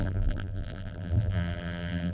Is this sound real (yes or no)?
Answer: no